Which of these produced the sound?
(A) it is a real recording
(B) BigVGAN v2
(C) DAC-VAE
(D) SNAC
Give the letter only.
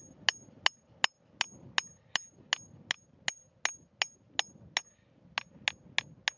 A